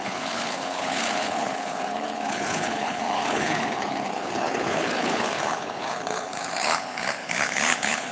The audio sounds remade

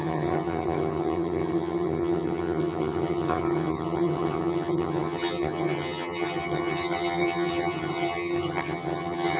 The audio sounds remade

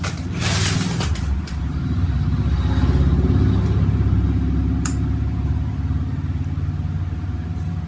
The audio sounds recorded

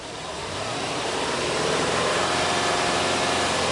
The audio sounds remade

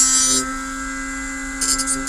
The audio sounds recorded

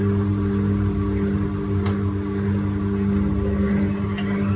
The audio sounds recorded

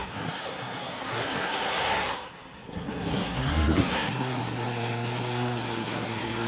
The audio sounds remade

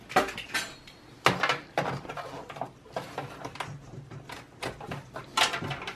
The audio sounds recorded